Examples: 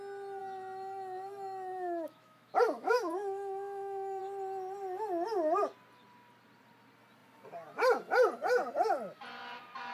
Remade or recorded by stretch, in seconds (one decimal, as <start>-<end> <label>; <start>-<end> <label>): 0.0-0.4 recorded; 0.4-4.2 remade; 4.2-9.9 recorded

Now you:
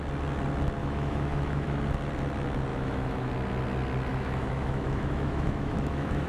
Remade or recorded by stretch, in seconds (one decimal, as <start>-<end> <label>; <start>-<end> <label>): 0.0-0.8 recorded; 0.8-1.8 remade; 1.8-2.7 recorded; 2.7-3.3 remade; 3.3-4.1 recorded; 4.1-6.3 remade

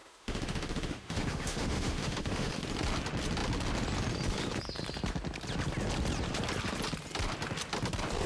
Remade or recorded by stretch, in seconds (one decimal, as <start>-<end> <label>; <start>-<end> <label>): 0.0-2.6 remade; 2.6-8.3 recorded

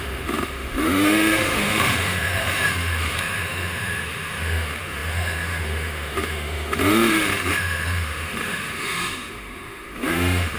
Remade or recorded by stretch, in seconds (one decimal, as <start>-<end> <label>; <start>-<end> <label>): 0.0-10.6 remade